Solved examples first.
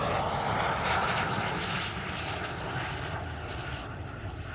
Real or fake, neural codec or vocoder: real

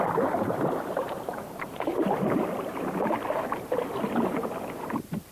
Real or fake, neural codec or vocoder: fake, vocoder, BigVGAN v2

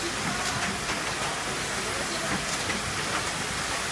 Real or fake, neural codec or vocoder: real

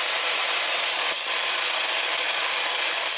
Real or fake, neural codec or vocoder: fake, vocoder, BigVGAN v2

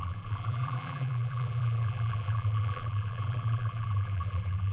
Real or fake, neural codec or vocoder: fake, vocoder, BigVGAN v2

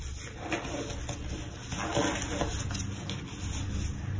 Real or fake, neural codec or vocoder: real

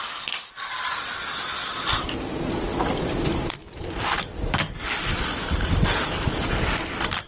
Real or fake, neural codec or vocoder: fake, vocoder, BigVGAN v2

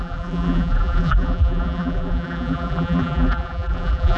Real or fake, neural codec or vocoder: fake, vocoder, BigVGAN v2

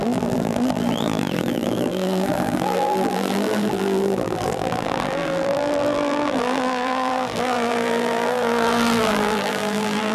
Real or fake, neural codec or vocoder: fake, vocoder, BigVGAN v2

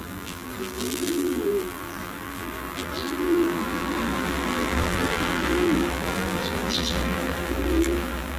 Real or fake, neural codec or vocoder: fake, vocoder, BigVGAN v2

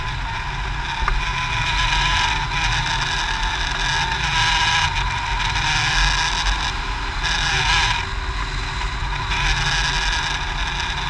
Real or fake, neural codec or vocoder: real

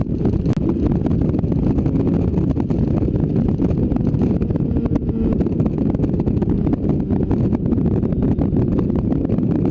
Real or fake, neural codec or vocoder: real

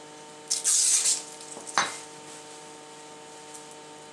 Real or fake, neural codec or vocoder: real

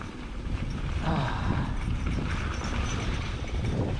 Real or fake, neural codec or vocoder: fake, vocoder, BigVGAN v2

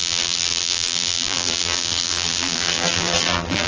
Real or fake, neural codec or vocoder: fake, vocoder, BigVGAN v2